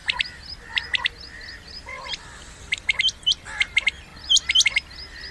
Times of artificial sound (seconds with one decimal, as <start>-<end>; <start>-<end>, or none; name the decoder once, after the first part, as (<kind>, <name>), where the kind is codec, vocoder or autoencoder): 0.7-4.1 (vocoder, BigVGAN v2)